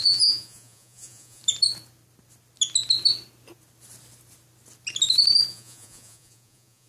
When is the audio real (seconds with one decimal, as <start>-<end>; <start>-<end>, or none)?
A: 1.4-5.5